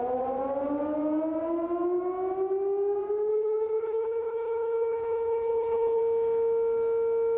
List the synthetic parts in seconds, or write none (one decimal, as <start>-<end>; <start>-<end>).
3.3-6.0